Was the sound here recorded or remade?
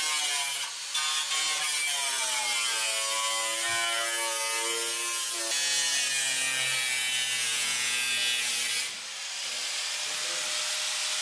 recorded